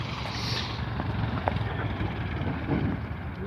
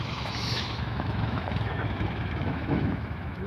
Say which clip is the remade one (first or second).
second